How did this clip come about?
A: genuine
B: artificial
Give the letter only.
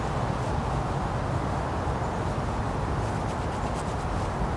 A